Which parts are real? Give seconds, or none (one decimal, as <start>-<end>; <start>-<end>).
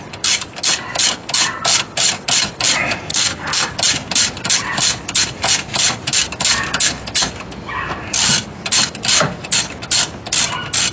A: 0.0-3.1; 3.7-10.9